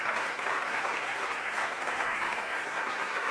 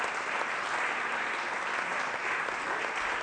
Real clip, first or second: second